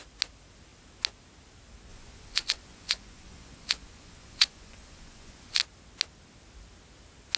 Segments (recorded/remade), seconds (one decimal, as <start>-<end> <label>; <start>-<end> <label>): 0.0-1.9 recorded; 1.9-5.6 remade; 5.6-7.4 recorded